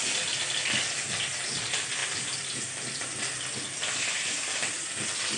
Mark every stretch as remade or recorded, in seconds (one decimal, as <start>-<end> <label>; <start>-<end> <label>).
0.0-5.4 recorded